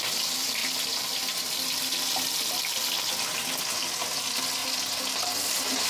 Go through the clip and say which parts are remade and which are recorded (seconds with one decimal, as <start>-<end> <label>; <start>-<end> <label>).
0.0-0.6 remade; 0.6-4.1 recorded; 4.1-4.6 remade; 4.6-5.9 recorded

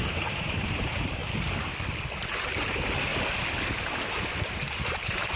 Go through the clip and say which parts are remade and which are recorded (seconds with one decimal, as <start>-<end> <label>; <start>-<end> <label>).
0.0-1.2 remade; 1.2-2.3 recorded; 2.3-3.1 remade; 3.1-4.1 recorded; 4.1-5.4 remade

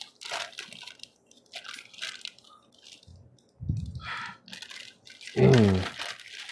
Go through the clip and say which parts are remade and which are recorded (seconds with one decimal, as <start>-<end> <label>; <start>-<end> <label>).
0.0-6.5 recorded

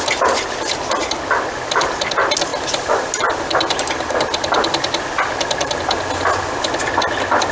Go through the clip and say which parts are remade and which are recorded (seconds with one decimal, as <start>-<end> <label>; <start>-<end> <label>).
0.0-7.5 recorded

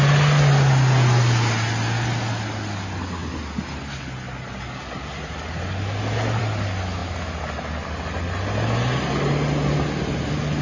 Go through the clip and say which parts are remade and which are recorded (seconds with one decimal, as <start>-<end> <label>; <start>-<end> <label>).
0.0-10.6 recorded